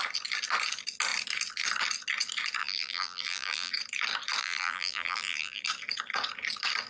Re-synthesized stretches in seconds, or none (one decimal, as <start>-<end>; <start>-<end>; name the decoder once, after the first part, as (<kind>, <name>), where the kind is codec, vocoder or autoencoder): 2.6-3.7 (vocoder, BigVGAN v2); 4.4-5.6